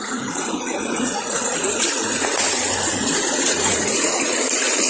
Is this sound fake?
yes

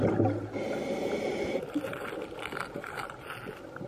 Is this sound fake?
no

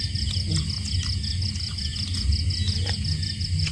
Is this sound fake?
no